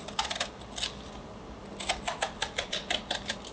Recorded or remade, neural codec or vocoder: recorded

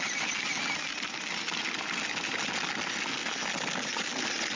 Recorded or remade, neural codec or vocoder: recorded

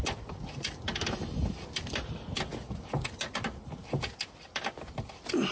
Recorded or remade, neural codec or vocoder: recorded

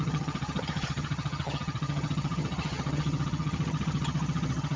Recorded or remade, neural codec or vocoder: remade, vocoder, HiFi-GAN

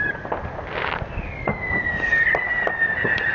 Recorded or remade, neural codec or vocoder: recorded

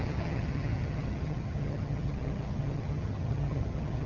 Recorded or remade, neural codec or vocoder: remade, vocoder, HiFi-GAN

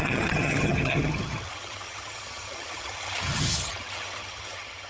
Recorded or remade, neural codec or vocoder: remade, vocoder, HiFi-GAN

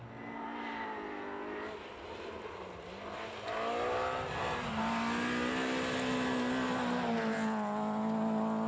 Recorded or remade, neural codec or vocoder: recorded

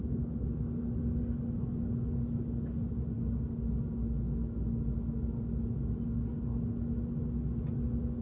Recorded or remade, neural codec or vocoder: recorded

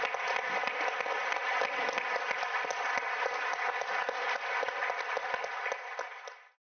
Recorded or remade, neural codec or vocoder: recorded